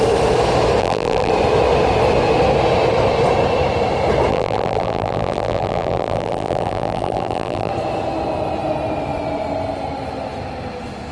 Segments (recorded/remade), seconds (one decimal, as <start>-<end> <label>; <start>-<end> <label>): 0.0-0.8 recorded; 0.8-1.3 remade; 1.3-4.3 recorded; 4.3-7.7 remade; 7.7-11.1 recorded

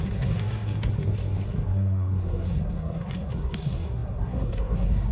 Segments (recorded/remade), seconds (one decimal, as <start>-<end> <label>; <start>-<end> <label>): 0.0-5.1 remade

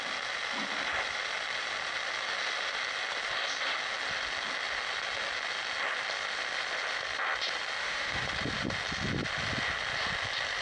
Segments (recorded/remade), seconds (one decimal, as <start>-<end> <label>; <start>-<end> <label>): 0.0-7.8 recorded; 7.8-8.3 remade; 8.3-10.6 recorded

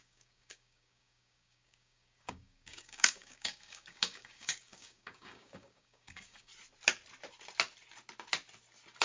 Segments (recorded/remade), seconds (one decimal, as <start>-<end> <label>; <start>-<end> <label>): 0.0-6.5 remade; 6.5-9.0 recorded